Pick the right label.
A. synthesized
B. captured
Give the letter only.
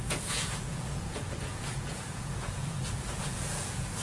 A